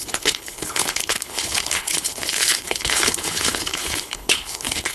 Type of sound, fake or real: fake